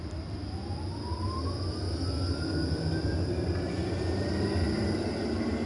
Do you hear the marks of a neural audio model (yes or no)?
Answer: no